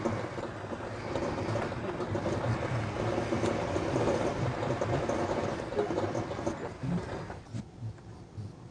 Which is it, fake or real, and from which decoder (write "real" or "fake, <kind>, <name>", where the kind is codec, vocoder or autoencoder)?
real